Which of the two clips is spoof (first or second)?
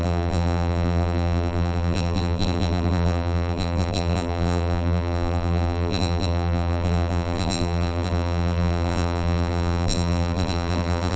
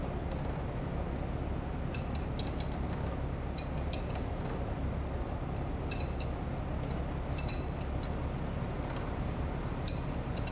first